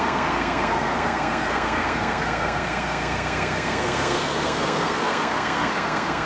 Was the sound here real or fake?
fake